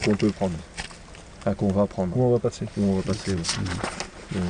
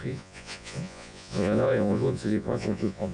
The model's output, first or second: second